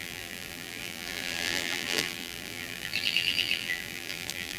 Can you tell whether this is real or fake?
fake